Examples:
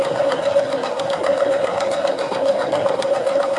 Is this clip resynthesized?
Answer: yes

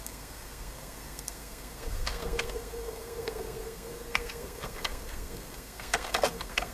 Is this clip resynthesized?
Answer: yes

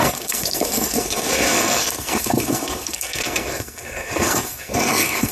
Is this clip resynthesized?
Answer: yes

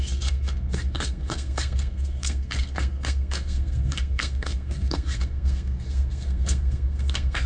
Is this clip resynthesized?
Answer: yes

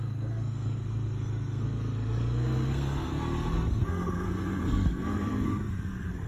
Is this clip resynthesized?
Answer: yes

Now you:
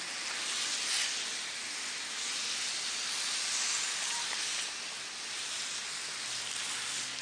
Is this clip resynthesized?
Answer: no